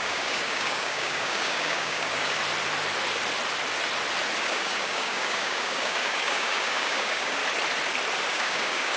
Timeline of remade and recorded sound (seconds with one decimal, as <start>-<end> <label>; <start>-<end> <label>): 0.0-2.4 remade; 2.4-4.4 recorded; 4.4-7.4 remade; 7.4-8.3 recorded; 8.3-9.0 remade